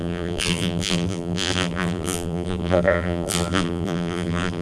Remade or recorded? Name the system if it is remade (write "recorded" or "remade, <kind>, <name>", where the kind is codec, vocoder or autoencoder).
remade, vocoder, BigVGAN v2